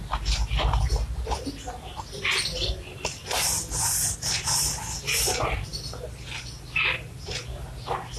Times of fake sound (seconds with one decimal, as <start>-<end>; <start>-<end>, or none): none